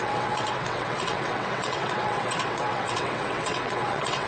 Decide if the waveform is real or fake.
fake